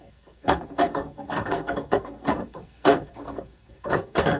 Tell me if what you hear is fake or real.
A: fake